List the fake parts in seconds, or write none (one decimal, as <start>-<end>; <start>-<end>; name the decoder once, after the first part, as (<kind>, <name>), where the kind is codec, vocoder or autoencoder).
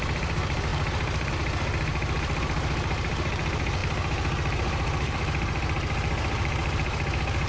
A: 0.0-7.5 (vocoder, BigVGAN v2)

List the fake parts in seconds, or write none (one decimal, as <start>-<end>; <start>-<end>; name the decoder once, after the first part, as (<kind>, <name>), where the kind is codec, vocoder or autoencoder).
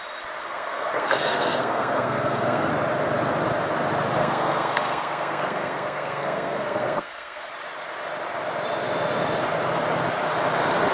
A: 0.4-2.7 (codec, SNAC); 4.2-7.5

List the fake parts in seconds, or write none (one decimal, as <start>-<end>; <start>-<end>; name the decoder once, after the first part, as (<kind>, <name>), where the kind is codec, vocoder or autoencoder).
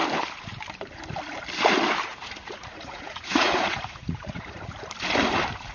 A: 2.1-4.6 (vocoder, Vocos)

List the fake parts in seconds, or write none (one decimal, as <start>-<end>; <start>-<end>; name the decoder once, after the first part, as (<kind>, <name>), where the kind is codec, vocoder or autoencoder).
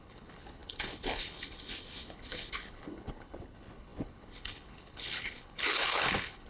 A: 0.0-6.5 (codec, HILCodec)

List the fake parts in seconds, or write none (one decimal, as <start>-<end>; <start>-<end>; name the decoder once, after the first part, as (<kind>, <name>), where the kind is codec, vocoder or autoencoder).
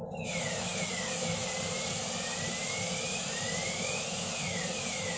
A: none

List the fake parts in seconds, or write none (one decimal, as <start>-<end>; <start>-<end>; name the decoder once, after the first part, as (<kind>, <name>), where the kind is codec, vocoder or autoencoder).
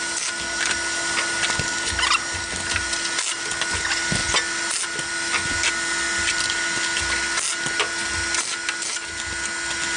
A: none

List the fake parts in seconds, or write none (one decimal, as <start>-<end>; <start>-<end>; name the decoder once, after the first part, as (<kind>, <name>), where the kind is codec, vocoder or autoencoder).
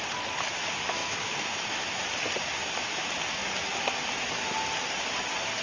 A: 1.0-2.0 (autoencoder, DAC-VAE); 2.6-3.1